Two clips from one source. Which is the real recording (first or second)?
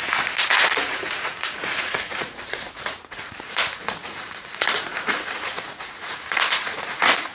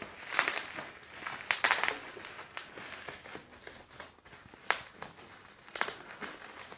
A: second